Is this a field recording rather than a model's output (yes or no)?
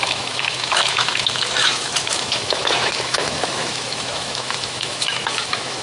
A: no